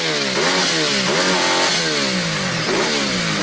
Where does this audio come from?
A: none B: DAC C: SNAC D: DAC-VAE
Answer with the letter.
A